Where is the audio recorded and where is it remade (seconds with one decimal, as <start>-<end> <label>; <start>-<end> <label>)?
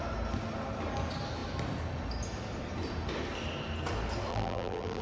0.0-4.3 recorded; 4.3-5.0 remade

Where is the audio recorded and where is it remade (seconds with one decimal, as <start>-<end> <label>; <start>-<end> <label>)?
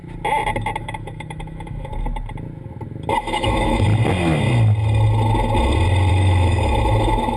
0.0-0.8 recorded; 0.8-1.9 remade; 1.9-3.2 recorded; 3.2-3.9 remade; 3.9-6.1 recorded; 6.1-7.4 remade